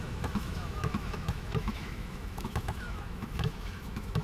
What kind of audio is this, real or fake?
fake